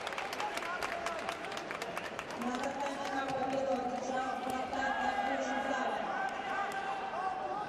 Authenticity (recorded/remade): remade